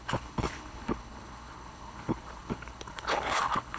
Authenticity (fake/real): fake